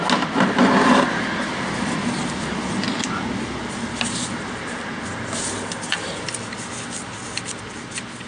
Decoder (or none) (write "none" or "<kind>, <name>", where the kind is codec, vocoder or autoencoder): none